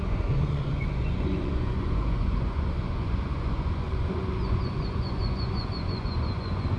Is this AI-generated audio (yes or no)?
yes